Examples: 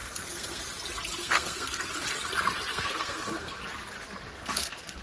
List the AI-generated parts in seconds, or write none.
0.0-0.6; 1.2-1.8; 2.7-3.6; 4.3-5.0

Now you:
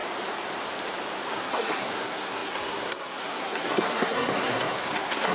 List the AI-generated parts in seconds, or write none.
1.3-5.3

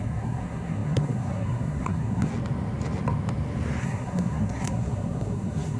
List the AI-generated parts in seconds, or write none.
0.0-2.3; 3.8-5.8

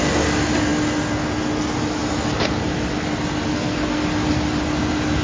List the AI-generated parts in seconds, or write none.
3.5-4.0

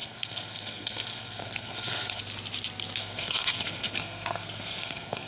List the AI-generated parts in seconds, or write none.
0.0-2.2; 3.0-5.3